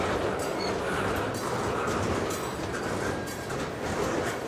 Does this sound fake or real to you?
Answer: real